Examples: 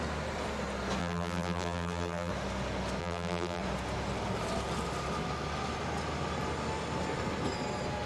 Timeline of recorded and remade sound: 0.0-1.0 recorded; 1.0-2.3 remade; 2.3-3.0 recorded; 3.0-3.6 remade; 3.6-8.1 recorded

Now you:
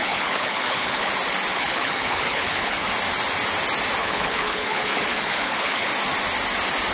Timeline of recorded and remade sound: 0.0-1.1 remade; 1.1-1.5 recorded; 1.5-2.9 remade; 2.9-4.0 recorded; 4.0-5.9 remade; 5.9-6.9 recorded

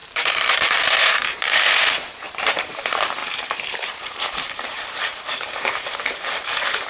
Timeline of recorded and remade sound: 0.0-6.9 remade

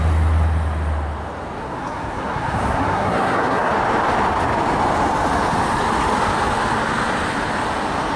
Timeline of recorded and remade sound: 0.0-1.6 recorded; 1.6-3.7 remade; 3.7-8.2 recorded

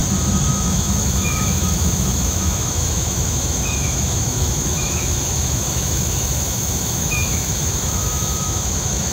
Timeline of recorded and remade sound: 0.0-0.5 recorded; 0.5-9.1 remade